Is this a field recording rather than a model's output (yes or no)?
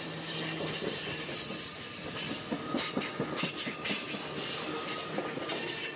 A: yes